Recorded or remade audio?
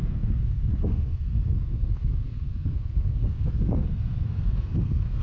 remade